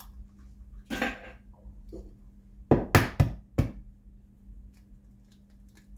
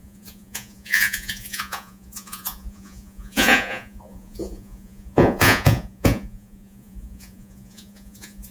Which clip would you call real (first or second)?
first